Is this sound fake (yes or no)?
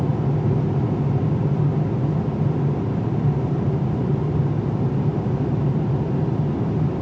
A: no